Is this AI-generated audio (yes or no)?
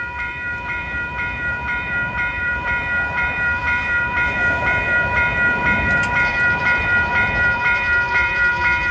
yes